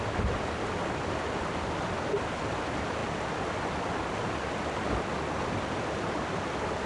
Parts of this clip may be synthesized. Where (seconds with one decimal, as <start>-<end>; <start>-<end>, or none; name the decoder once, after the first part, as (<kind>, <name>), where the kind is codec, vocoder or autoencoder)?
none